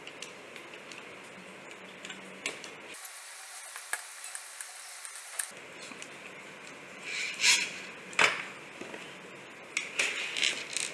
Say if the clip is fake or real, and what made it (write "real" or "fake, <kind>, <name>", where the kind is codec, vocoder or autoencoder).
real